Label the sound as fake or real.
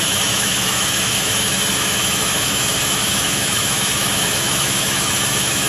fake